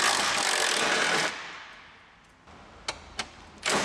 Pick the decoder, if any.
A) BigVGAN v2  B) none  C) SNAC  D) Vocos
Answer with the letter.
B